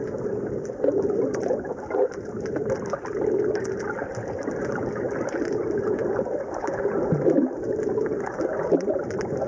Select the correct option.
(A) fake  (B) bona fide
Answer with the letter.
B